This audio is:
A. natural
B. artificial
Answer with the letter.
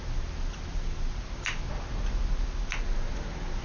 A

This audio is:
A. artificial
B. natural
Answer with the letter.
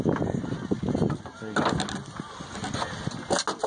B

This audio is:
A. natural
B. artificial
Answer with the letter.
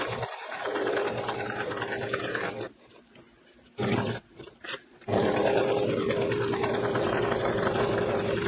B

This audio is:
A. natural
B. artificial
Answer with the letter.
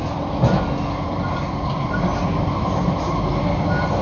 A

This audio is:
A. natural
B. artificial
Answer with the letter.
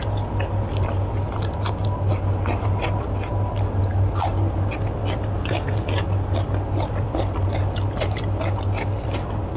A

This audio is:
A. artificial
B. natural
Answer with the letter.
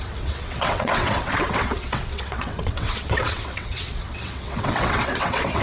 A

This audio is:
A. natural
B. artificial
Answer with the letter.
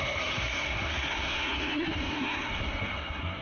B